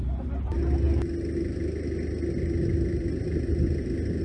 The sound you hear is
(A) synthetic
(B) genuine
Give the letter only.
B